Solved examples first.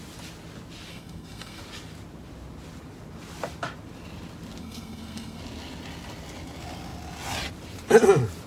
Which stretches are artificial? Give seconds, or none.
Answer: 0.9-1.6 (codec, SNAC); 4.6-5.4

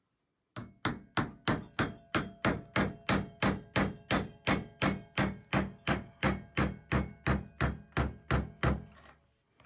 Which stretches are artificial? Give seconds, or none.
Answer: none

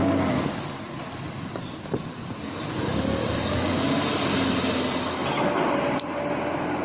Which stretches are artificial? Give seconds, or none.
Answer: none

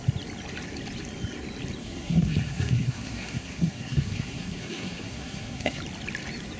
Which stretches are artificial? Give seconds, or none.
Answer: 1.8-5.8 (codec, SNAC)

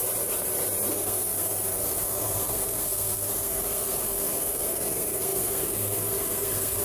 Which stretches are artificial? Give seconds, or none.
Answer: 0.9-6.8 (codec, SNAC)

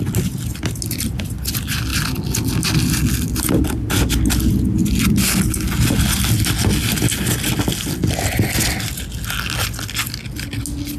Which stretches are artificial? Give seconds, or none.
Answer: none

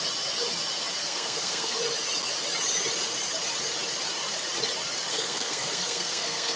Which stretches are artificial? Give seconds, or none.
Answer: 1.0-1.8 (codec, SNAC); 5.1-6.6

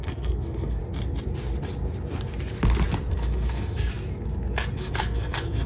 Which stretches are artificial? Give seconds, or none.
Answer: 0.0-0.8 (codec, SNAC); 3.1-3.9; 4.7-5.7